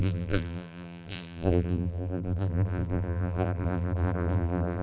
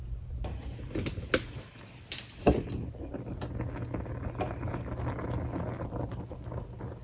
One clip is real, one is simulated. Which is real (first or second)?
second